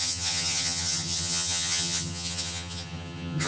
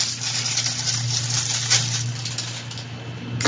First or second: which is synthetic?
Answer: first